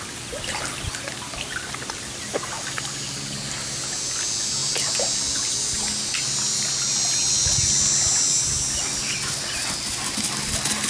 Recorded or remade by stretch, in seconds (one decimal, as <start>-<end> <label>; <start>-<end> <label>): 0.0-10.9 recorded